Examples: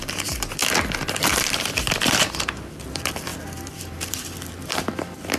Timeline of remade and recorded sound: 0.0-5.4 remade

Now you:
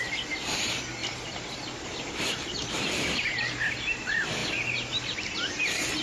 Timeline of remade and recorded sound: 0.0-6.0 recorded

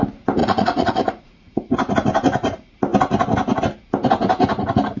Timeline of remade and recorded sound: 0.0-0.4 recorded; 0.4-1.7 remade; 1.7-5.0 recorded

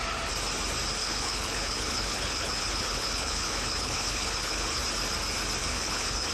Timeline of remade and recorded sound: 0.0-1.0 recorded; 1.0-4.8 remade; 4.8-5.6 recorded; 5.6-6.3 remade

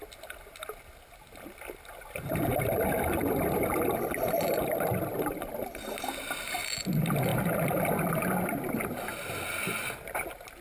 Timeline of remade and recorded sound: 0.0-10.6 recorded

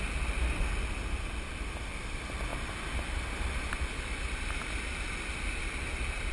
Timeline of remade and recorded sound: 0.0-6.3 recorded